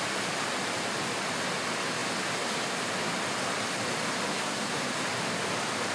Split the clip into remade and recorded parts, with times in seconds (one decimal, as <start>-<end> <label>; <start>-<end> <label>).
0.0-4.3 recorded; 4.3-4.9 remade; 4.9-5.9 recorded

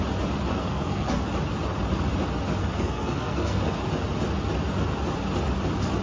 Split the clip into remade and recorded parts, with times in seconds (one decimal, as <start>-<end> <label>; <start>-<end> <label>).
0.0-0.5 recorded; 0.5-1.2 remade; 1.2-2.6 recorded; 2.6-3.9 remade; 3.9-6.0 recorded